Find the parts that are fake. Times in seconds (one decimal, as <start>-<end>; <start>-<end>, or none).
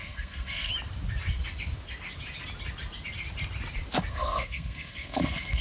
0.0-0.7; 4.1-5.6